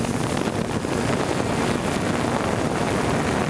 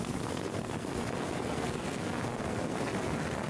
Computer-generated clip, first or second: second